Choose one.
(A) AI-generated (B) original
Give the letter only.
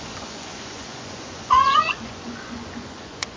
A